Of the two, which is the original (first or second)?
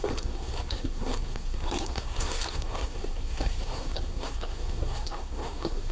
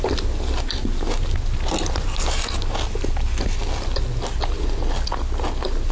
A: second